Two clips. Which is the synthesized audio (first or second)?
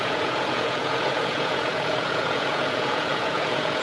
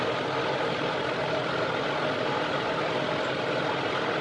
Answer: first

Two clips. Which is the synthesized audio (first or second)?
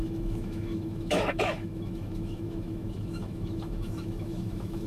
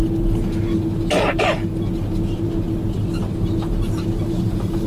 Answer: first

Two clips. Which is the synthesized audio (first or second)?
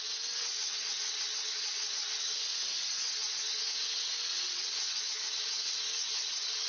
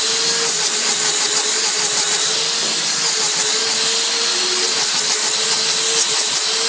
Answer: first